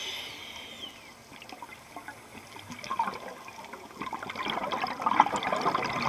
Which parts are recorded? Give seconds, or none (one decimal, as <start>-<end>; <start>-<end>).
0.0-6.1